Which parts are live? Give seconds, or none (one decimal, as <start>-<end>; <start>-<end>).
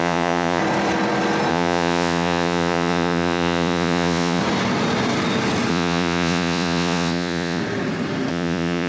0.6-1.5; 4.4-5.7; 7.6-8.3